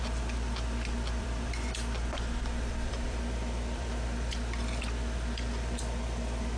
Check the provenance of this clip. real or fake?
fake